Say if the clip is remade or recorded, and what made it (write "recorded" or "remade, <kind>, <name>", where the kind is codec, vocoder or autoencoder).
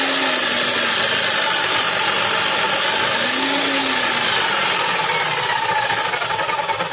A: recorded